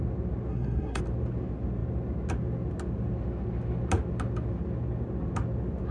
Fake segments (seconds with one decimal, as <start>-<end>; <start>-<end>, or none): 0.5-1.0